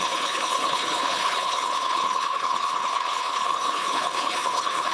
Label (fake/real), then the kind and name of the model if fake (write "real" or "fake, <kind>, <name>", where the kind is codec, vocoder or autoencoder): fake, codec, HILCodec